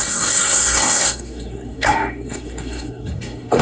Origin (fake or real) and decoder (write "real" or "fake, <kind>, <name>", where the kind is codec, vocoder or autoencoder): fake, codec, SNAC